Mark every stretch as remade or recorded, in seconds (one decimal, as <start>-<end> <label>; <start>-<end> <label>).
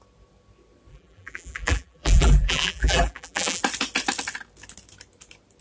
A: 0.0-0.9 recorded; 0.9-3.6 remade; 3.6-5.6 recorded